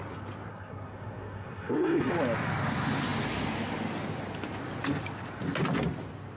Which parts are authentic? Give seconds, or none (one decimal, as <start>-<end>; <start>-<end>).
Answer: 0.0-0.5; 2.1-6.4